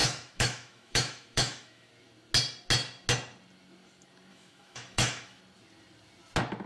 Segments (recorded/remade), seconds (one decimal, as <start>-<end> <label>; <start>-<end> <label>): 0.0-1.9 remade; 1.9-4.3 recorded; 4.3-5.4 remade; 5.4-6.7 recorded